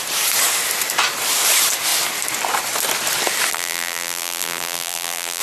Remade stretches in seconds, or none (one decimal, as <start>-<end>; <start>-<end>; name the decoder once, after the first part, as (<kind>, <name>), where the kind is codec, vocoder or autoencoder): 3.5-5.4 (vocoder, BigVGAN v2)